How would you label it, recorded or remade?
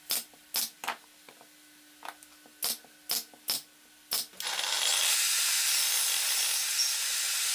recorded